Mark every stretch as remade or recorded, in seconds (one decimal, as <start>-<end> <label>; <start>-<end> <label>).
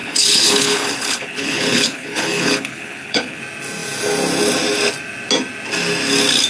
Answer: 0.0-3.4 remade; 3.4-6.5 recorded